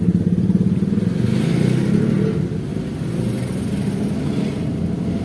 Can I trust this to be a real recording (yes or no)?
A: yes